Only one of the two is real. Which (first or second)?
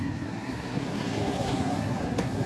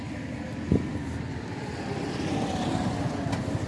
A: second